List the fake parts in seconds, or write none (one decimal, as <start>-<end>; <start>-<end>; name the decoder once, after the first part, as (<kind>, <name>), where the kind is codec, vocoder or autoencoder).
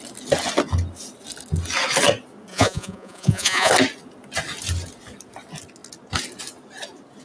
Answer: 2.5-3.7 (vocoder, Vocos)